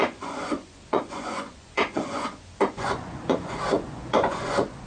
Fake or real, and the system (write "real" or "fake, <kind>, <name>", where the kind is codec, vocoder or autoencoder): fake, vocoder, Vocos